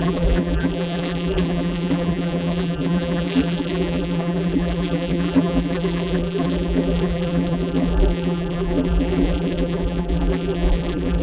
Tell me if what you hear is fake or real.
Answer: fake